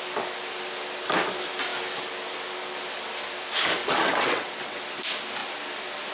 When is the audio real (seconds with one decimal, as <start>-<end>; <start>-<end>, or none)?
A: 0.0-3.8; 4.8-6.1

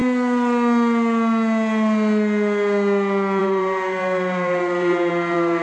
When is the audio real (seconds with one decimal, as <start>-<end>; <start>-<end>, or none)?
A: 0.0-3.4

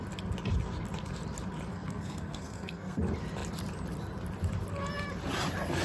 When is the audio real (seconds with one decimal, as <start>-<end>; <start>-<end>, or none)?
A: 0.0-1.7; 3.0-5.8

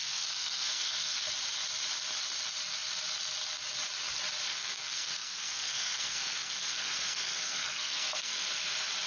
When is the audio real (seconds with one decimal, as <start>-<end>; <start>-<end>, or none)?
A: 1.3-4.5; 8.7-9.1

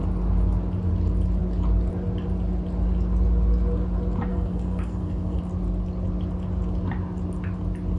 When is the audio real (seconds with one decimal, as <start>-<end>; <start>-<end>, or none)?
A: 0.0-4.3; 5.4-8.0

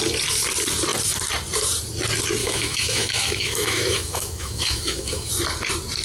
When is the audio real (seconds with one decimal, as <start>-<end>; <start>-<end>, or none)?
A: 0.0-2.4; 5.3-6.0

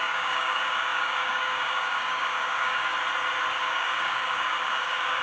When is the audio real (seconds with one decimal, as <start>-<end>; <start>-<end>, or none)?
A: 2.9-3.6

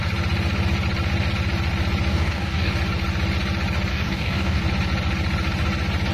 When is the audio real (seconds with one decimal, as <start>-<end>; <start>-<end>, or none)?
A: 0.0-2.1; 2.7-3.9; 4.6-6.1